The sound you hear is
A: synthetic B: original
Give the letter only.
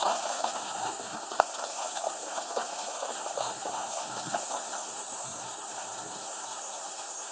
A